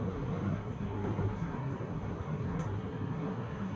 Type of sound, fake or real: fake